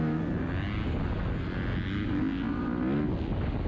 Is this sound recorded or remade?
recorded